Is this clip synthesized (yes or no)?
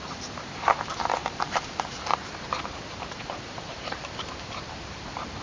yes